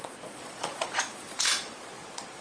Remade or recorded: remade